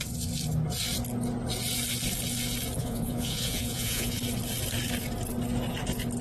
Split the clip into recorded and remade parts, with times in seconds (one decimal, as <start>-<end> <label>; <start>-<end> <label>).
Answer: 0.0-2.8 recorded; 2.8-4.2 remade; 4.2-6.2 recorded